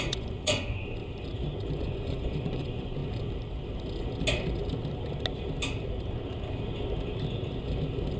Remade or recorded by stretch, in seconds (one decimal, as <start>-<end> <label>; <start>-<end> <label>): 0.0-1.0 remade; 1.0-1.8 recorded; 1.8-3.0 remade; 3.0-8.2 recorded